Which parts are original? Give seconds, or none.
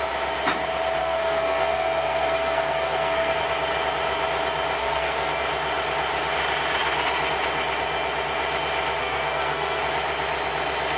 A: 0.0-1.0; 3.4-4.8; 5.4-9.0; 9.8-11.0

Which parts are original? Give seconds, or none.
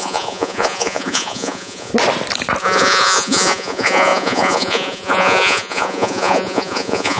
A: 1.9-2.6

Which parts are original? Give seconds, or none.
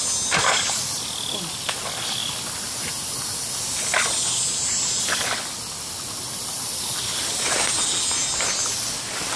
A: 0.0-9.4